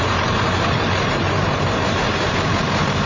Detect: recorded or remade remade